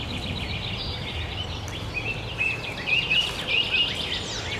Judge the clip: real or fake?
real